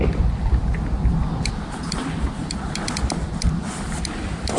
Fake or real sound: real